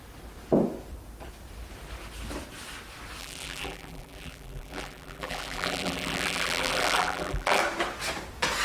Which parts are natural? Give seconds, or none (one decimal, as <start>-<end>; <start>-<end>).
0.0-3.2; 7.6-8.6

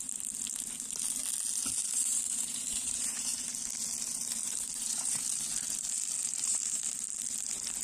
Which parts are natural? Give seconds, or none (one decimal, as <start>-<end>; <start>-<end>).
0.0-1.8; 3.5-4.4; 5.2-6.2; 6.8-7.8

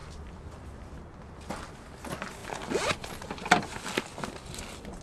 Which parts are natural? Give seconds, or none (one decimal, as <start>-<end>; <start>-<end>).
1.6-2.4; 3.2-5.0

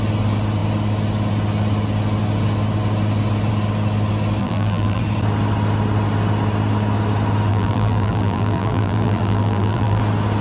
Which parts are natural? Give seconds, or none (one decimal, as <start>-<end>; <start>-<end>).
0.0-4.4; 5.0-7.5; 10.0-10.4

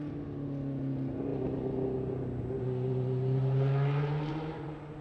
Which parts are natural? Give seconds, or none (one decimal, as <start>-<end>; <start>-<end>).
0.0-5.0